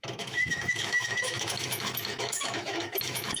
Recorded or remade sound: remade